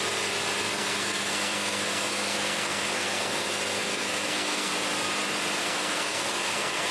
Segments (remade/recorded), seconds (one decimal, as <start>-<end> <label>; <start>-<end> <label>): 0.0-0.6 recorded; 0.6-4.7 remade; 4.7-5.6 recorded; 5.6-6.9 remade

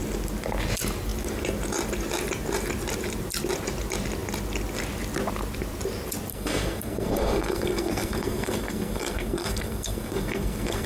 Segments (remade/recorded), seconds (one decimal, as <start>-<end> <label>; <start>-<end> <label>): 0.0-6.3 recorded; 6.3-10.9 remade

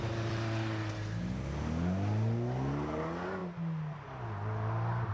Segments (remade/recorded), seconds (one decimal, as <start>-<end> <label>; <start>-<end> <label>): 0.0-5.1 recorded

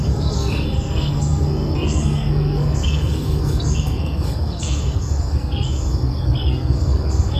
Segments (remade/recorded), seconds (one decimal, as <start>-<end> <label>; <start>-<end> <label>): 0.0-7.4 remade

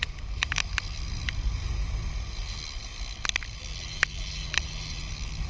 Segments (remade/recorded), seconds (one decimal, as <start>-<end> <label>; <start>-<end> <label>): 0.0-5.5 recorded